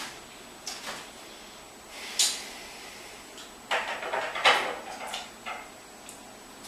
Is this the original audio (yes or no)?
yes